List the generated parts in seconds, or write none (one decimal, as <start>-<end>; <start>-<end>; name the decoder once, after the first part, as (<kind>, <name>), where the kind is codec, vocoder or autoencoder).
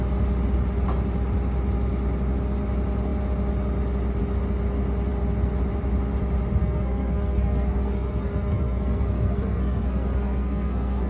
6.6-11.1 (codec, SNAC)